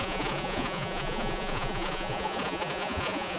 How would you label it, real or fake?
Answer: fake